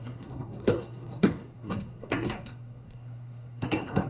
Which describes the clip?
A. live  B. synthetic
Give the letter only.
B